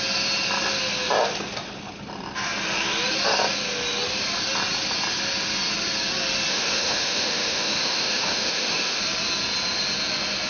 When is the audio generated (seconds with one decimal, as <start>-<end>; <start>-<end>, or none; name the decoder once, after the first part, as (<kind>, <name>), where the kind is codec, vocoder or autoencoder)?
6.5-9.0 (autoencoder, DAC-VAE)